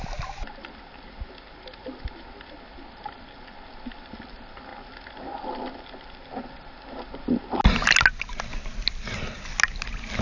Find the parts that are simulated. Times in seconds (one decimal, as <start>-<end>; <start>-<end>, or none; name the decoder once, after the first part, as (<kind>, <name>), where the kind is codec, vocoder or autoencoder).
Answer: none